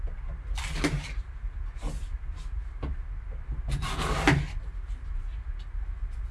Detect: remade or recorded recorded